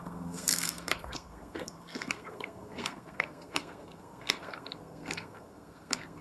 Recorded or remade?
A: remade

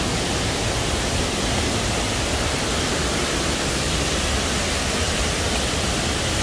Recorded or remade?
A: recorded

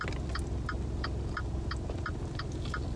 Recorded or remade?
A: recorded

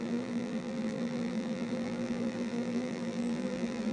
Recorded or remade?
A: remade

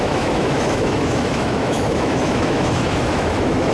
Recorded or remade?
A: remade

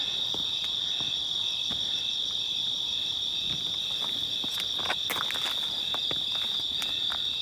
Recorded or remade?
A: recorded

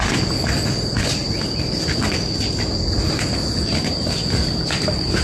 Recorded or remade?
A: recorded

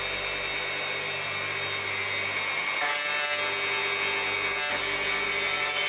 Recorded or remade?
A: recorded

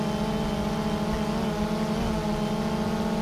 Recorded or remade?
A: recorded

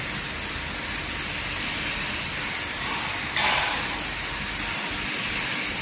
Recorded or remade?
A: recorded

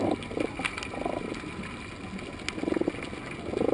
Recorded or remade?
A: recorded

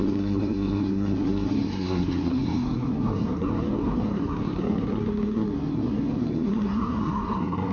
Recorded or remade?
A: remade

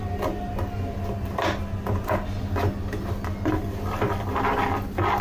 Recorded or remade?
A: recorded